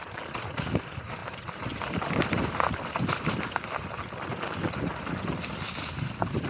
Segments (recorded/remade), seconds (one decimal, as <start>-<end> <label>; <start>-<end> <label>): 0.0-6.5 recorded